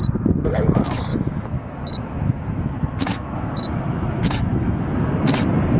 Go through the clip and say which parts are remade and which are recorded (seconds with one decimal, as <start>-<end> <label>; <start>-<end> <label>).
0.0-1.1 recorded; 1.1-2.7 remade; 2.7-3.1 recorded; 3.1-4.9 remade; 4.9-5.8 recorded